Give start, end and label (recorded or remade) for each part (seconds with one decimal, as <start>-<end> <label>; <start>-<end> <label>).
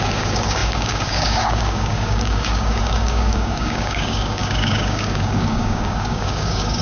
0.0-6.8 remade